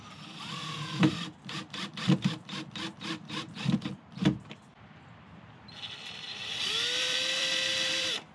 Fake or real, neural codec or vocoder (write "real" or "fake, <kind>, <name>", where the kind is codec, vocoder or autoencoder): fake, vocoder, BigVGAN v2